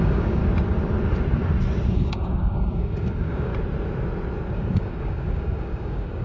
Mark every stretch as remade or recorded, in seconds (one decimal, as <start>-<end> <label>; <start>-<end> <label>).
0.0-0.4 remade; 0.4-1.9 recorded; 1.9-3.5 remade; 3.5-4.5 recorded; 4.5-6.2 remade